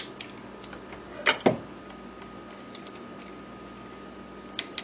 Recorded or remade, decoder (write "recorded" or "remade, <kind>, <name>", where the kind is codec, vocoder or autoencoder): recorded